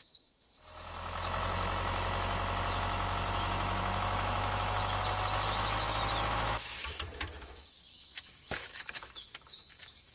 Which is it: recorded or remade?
remade